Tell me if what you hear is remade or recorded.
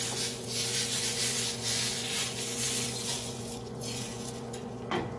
remade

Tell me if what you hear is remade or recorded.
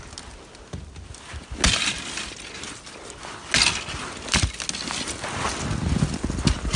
recorded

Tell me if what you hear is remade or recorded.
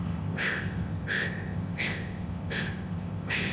remade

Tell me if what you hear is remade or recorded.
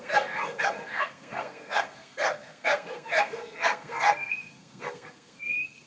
remade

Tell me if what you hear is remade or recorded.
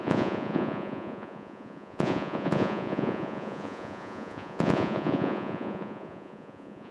remade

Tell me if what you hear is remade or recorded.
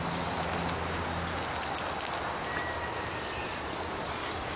recorded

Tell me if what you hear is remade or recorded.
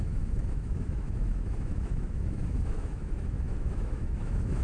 remade